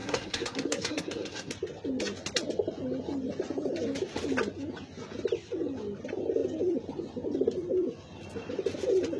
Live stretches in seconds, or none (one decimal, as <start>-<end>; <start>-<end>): 1.5-9.2